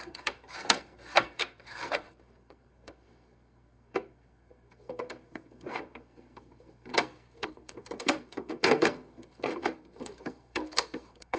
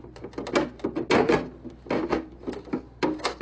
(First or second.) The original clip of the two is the second